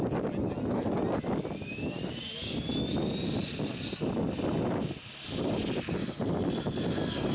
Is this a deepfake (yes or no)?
no